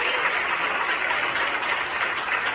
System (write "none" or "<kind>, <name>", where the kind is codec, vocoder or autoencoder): none